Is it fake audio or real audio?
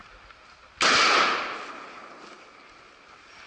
real